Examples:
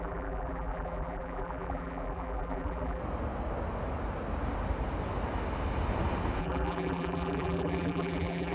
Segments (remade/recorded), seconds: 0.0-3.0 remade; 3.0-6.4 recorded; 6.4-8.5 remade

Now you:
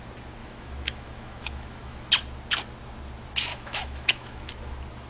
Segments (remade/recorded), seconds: 0.0-0.4 recorded; 0.4-2.1 remade; 2.1-3.5 recorded; 3.5-4.5 remade; 4.5-5.1 recorded

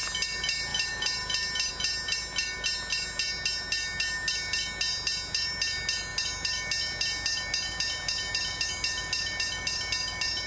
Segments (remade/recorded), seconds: 0.0-10.5 recorded

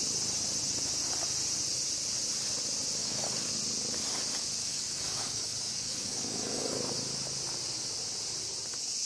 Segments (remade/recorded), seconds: 0.0-3.0 recorded; 3.0-3.5 remade; 3.5-4.6 recorded; 4.6-6.8 remade; 6.8-9.1 recorded

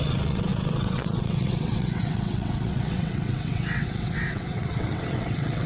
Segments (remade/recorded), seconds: 0.0-5.7 remade

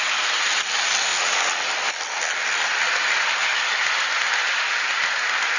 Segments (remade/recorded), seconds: 0.0-5.6 recorded